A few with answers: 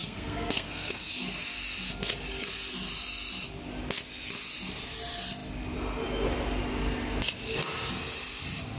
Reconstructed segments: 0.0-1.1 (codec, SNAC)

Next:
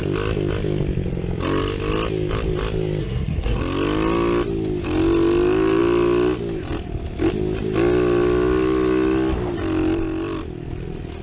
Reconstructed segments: 3.0-3.6 (codec, SNAC)

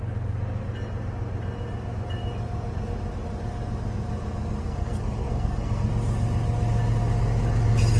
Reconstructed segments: 4.6-5.9 (codec, SNAC)

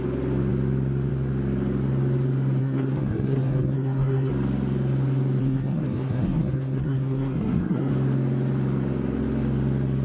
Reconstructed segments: 2.6-4.3 (codec, SNAC); 5.4-7.9

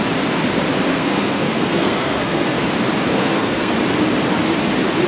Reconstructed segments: 0.9-2.6 (codec, SNAC); 3.1-3.7

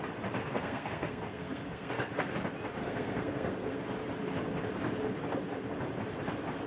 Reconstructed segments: 0.4-2.3 (codec, SNAC); 2.8-3.8

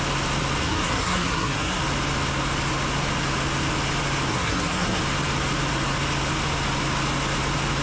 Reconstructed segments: 0.6-1.8 (codec, SNAC); 4.3-5.0

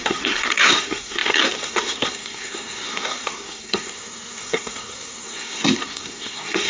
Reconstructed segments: 0.0-6.7 (codec, SNAC)